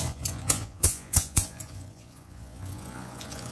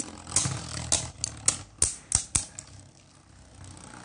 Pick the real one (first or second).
second